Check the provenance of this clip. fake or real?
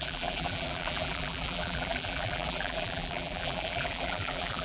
fake